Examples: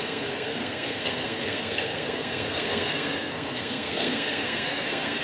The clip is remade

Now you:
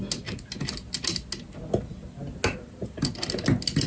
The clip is recorded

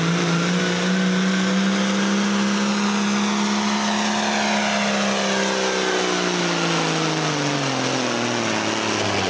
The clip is recorded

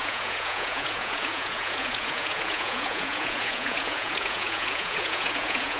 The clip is remade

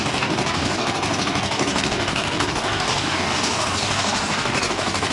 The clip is remade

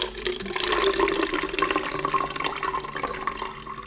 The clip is recorded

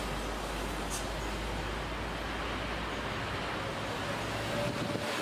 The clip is recorded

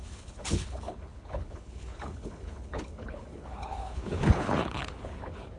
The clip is remade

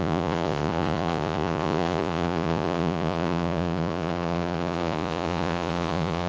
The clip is remade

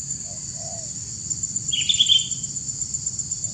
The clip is recorded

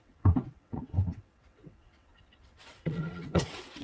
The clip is remade